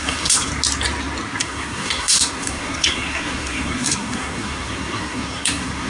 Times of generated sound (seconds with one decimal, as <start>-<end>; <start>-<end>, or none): 0.0-0.5; 1.4-5.9